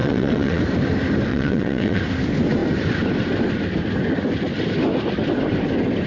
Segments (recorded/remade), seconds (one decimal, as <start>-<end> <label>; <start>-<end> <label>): 0.0-0.6 remade; 0.6-1.3 recorded; 1.3-2.0 remade; 2.0-6.1 recorded